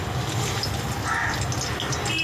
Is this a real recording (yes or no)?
yes